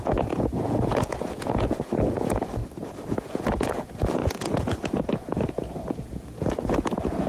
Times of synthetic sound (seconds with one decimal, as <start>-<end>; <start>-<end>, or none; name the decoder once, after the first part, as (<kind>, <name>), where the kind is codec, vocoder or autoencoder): 0.0-2.6 (vocoder, Vocos); 3.2-7.3